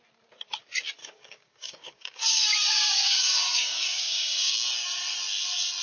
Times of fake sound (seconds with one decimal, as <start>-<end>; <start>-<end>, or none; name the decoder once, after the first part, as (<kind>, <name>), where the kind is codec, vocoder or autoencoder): 1.0-4.5 (codec, DAC)